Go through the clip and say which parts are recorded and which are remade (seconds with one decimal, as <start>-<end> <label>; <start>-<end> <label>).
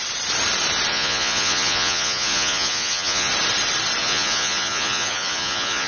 0.0-0.9 recorded; 0.9-3.3 remade; 3.3-4.0 recorded; 4.0-5.9 remade